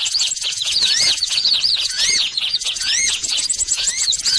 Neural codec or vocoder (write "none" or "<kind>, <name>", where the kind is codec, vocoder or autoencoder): vocoder, Vocos